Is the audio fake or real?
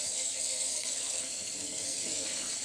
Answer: fake